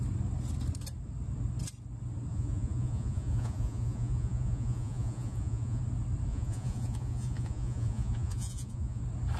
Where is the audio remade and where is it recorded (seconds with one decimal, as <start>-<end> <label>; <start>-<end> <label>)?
0.0-2.3 recorded; 2.3-5.8 remade; 5.8-6.3 recorded; 6.3-9.0 remade; 9.0-9.4 recorded